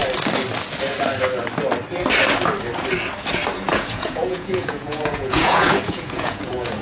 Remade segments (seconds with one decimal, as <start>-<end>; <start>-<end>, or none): 3.7-6.8